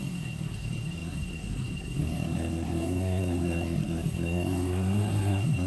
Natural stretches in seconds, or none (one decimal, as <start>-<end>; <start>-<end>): none